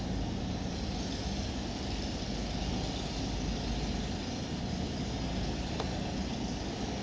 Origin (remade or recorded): recorded